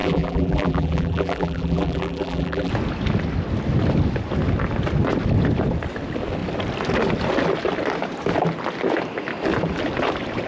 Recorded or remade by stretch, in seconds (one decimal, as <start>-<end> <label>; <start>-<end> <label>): 0.0-2.7 remade; 2.7-10.5 recorded